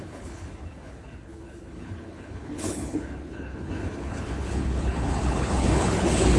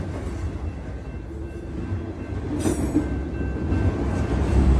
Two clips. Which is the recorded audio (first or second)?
second